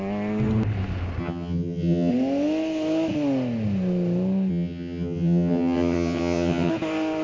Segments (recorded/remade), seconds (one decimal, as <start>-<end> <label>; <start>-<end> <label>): 0.0-1.2 recorded; 1.2-2.1 remade; 2.1-4.5 recorded; 4.5-6.7 remade; 6.7-7.2 recorded